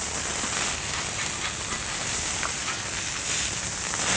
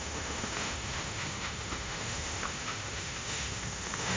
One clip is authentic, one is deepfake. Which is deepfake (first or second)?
second